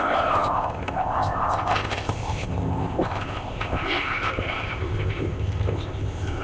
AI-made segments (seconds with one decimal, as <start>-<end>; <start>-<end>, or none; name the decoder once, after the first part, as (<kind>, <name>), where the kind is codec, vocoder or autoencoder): 0.0-6.4 (codec, ZipCodec)